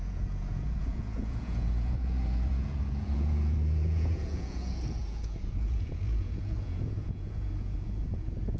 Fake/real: fake